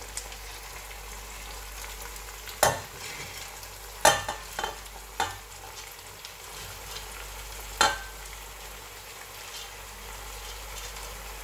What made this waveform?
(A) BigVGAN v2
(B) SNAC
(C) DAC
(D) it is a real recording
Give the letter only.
D